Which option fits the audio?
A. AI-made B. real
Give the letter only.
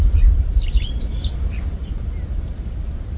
B